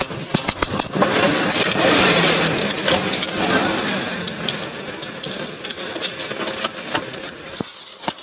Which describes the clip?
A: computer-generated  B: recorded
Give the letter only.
B